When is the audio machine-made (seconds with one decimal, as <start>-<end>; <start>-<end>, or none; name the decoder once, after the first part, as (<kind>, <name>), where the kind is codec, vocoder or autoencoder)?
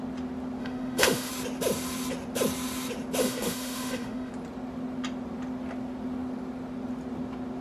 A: 0.6-1.3 (autoencoder, DAC-VAE); 3.2-4.3